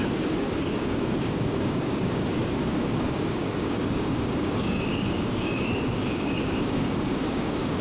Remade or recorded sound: remade